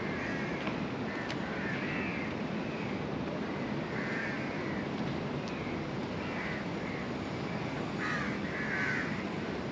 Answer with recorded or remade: recorded